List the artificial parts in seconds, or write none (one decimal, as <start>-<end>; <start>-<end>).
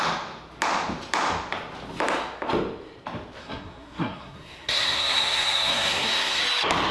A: 3.4-6.4